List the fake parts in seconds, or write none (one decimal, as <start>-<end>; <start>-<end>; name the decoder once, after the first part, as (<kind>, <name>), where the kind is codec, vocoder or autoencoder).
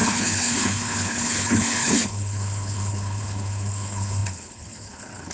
0.0-5.3 (codec, HILCodec)